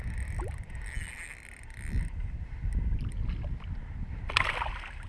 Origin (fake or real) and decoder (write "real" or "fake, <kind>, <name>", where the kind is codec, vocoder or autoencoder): real